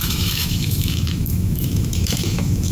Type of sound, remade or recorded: remade